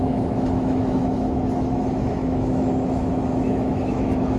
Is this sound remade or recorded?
remade